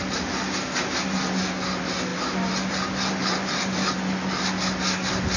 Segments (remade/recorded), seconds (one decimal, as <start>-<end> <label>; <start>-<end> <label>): 0.0-3.2 recorded; 3.2-4.0 remade; 4.0-5.4 recorded

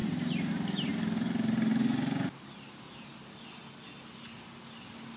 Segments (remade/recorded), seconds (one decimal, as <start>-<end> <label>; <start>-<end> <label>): 0.0-5.2 recorded